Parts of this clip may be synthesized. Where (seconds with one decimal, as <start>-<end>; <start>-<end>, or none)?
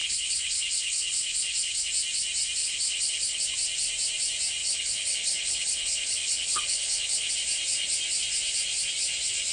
0.0-1.9; 2.6-3.4; 4.6-7.3